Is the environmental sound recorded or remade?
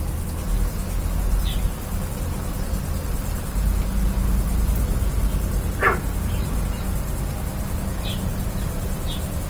recorded